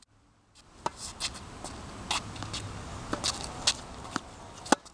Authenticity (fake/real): real